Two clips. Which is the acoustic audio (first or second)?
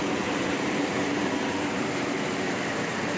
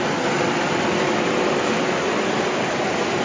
second